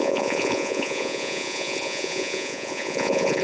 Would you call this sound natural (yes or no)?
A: no